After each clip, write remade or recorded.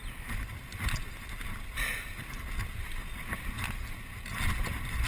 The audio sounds remade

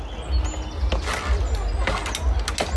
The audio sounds recorded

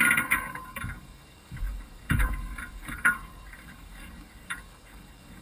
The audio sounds remade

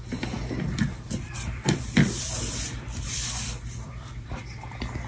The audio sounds remade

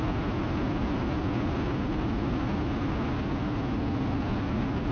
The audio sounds recorded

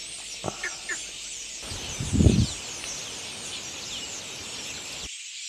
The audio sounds recorded